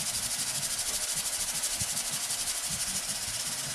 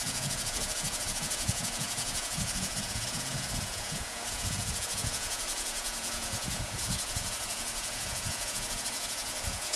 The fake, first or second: second